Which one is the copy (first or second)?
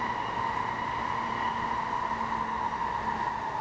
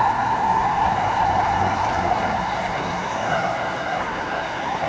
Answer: second